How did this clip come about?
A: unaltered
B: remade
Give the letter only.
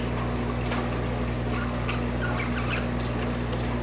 A